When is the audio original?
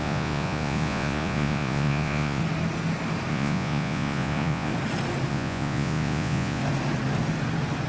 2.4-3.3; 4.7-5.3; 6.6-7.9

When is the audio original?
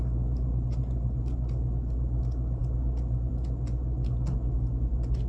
0.0-5.3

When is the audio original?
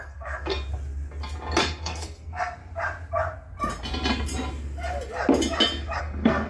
0.5-1.6; 2.6-6.0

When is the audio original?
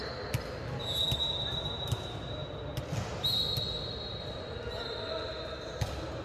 0.0-6.2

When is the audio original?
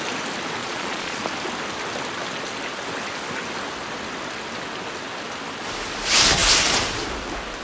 0.0-0.6; 1.2-7.6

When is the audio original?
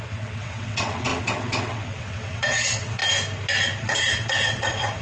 3.0-3.8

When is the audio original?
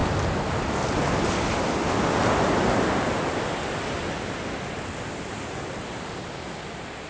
0.0-7.1